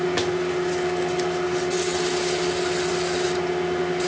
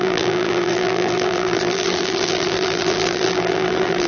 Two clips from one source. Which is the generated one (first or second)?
second